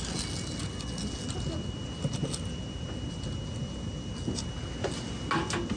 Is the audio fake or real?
real